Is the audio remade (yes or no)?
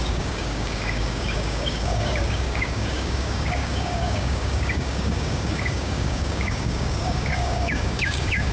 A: yes